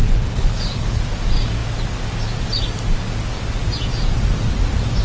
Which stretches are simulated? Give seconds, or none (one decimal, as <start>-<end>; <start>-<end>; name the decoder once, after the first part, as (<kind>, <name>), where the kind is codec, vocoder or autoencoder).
0.0-1.0 (codec, HILCodec)